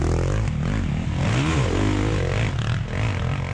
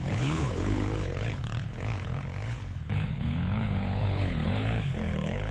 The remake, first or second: second